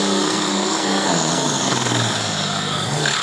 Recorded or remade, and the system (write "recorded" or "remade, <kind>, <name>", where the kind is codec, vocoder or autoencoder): remade, codec, SNAC